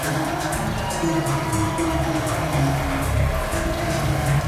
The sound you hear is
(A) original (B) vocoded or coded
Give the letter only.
A